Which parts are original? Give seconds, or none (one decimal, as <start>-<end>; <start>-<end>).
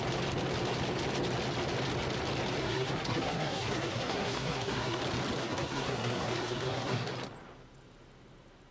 0.0-2.6; 5.0-5.4; 7.1-8.7